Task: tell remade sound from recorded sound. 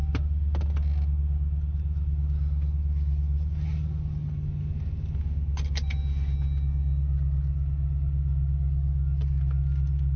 recorded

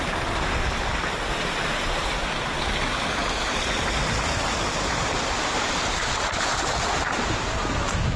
recorded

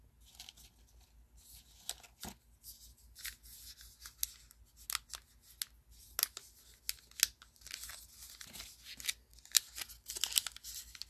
recorded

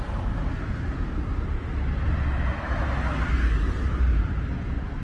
recorded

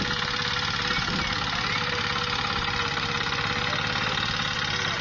recorded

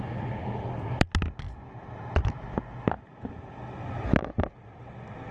recorded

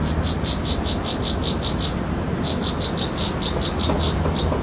recorded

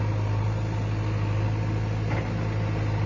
recorded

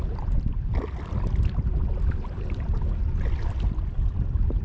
recorded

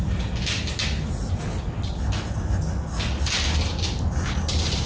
recorded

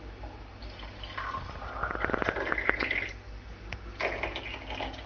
recorded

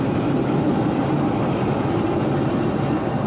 recorded